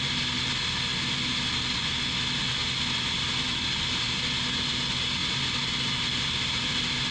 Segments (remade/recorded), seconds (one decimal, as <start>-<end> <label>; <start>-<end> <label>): 0.0-7.1 recorded